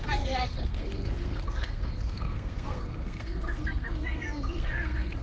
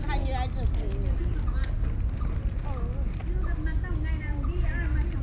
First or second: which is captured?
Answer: second